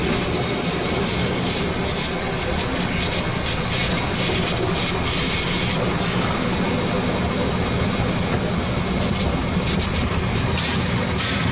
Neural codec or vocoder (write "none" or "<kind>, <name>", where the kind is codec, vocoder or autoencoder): none